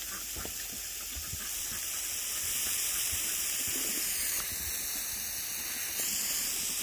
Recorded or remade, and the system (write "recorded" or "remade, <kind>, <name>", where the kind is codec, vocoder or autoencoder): recorded